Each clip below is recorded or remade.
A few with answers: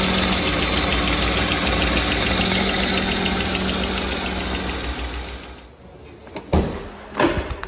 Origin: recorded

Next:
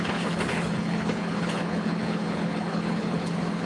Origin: remade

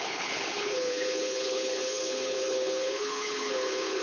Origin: remade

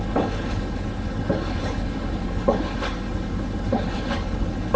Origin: remade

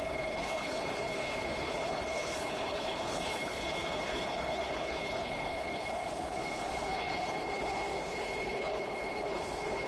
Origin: remade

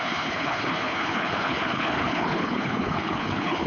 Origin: remade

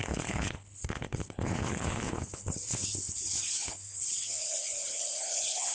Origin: remade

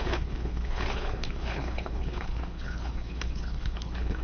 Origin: remade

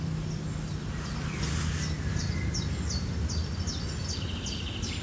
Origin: recorded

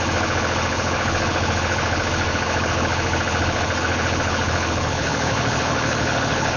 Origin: remade